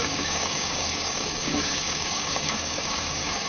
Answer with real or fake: fake